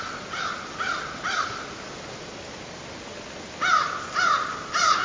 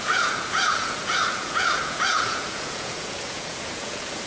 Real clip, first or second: first